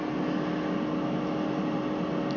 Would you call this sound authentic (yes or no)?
yes